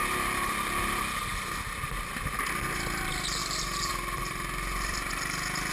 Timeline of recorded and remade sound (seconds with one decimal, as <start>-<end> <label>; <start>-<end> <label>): 0.0-3.4 recorded; 3.4-5.1 remade; 5.1-5.7 recorded